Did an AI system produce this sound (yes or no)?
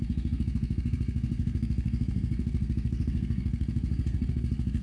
yes